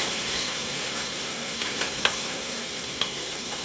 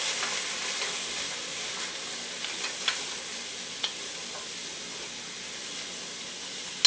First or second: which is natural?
second